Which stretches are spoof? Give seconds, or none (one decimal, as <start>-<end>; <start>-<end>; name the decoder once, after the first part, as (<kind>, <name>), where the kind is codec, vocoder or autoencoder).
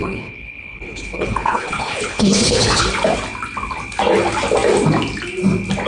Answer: 0.0-2.8 (codec, HILCodec)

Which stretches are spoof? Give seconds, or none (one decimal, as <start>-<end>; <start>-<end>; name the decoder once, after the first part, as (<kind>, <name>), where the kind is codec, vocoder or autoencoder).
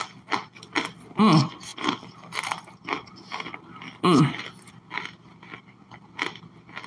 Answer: none